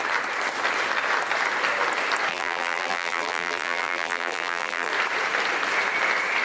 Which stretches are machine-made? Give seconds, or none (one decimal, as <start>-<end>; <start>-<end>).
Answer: 2.3-4.9